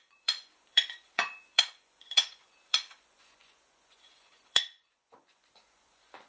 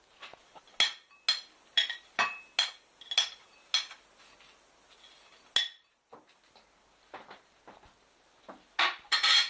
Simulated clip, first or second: first